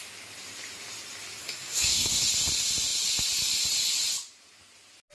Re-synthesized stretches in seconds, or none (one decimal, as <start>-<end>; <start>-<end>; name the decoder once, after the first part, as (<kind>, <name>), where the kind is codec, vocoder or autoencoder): 1.4-2.3 (codec, SNAC)